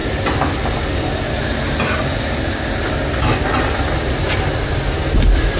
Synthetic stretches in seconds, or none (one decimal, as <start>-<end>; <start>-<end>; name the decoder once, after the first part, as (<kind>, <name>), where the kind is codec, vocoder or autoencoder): none